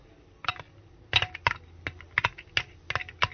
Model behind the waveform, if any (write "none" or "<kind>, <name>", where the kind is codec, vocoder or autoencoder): none